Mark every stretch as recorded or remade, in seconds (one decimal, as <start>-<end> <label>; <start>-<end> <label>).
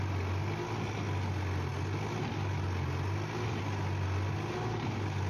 0.0-5.3 recorded